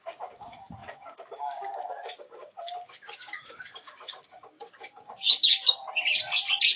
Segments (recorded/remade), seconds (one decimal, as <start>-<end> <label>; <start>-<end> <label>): 0.0-5.6 remade; 5.6-6.8 recorded

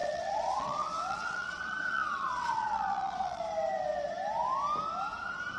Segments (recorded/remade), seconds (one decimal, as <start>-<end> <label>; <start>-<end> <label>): 0.0-3.4 remade; 3.4-5.6 recorded

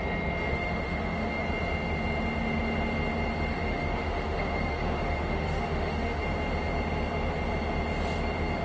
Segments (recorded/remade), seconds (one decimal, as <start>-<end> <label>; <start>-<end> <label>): 0.0-0.5 recorded; 0.5-1.4 remade; 1.4-3.5 recorded; 3.5-6.2 remade; 6.2-8.6 recorded

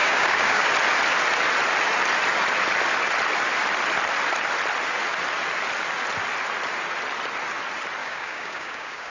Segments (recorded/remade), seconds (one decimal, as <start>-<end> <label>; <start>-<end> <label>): 0.0-0.7 remade; 0.7-8.0 recorded; 8.0-9.1 remade

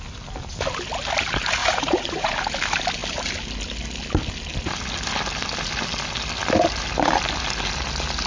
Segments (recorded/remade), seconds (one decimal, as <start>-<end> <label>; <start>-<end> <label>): 0.0-1.6 recorded; 1.6-2.3 remade; 2.3-8.3 recorded